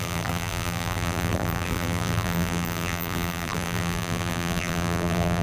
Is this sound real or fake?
fake